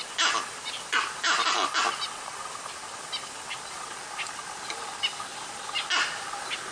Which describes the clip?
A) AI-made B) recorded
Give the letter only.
B